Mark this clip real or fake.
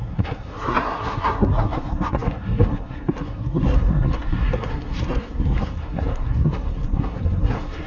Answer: fake